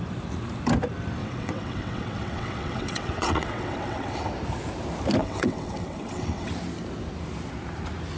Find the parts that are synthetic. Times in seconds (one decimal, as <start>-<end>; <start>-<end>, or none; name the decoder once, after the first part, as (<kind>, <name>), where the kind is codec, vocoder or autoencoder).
1.2-4.3 (vocoder, WaveNeXt); 5.2-6.5